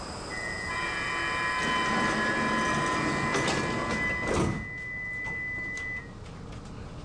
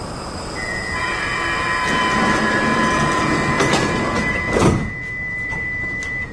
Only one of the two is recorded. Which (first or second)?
first